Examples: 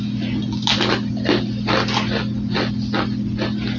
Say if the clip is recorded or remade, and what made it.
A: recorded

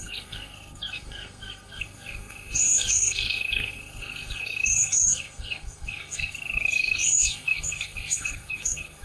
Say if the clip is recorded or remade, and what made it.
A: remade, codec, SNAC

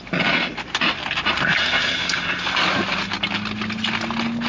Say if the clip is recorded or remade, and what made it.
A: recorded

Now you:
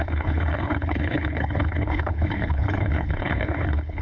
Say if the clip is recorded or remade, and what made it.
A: remade, codec, HILCodec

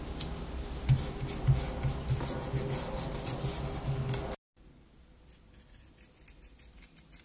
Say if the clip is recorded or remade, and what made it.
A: recorded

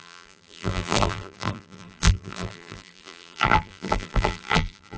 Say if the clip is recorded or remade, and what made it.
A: remade, vocoder, BigVGAN v2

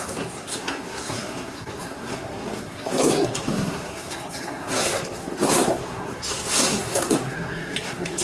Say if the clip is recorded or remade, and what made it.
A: remade, codec, SNAC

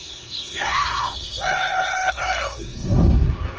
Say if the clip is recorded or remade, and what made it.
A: remade, codec, SNAC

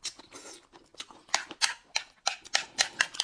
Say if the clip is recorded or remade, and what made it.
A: recorded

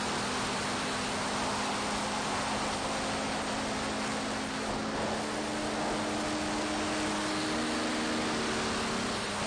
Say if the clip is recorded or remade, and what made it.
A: recorded